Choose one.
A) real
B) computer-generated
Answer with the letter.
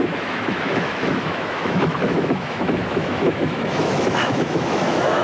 B